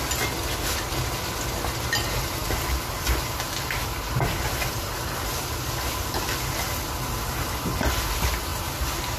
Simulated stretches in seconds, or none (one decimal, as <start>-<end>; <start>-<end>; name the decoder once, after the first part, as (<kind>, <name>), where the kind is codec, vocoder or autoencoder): none